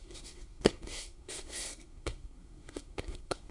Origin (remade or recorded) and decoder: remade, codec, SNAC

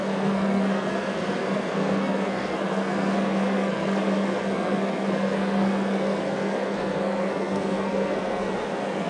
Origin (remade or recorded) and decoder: remade, codec, SNAC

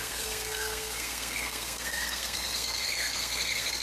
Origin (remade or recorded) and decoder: remade, codec, SNAC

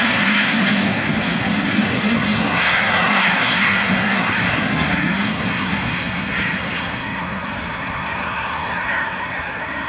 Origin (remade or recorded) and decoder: remade, codec, SNAC